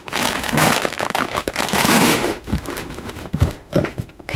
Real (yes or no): no